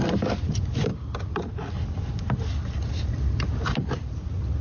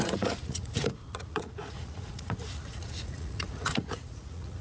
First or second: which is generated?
second